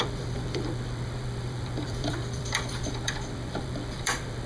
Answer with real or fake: fake